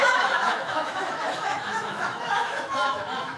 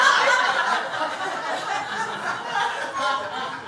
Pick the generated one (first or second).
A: first